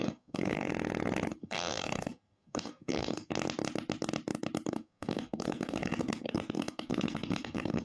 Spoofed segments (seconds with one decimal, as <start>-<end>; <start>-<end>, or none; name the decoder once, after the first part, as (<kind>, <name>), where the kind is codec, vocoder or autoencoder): 0.0-0.7 (codec, SNAC); 1.4-3.3; 4.7-7.8